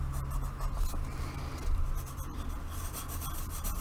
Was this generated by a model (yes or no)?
no